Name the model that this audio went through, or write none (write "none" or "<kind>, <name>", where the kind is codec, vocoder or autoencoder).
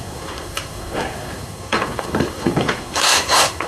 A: codec, SNAC